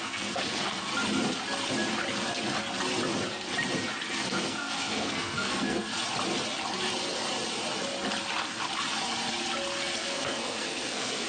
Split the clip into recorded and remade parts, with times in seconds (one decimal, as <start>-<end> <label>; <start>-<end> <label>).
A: 0.0-0.9 remade; 0.9-4.1 recorded; 4.1-5.9 remade; 5.9-10.0 recorded; 10.0-11.3 remade